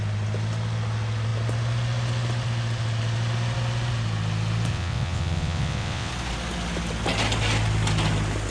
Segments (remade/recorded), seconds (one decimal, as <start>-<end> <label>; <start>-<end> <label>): 0.0-4.7 recorded; 4.7-6.1 remade; 6.1-8.5 recorded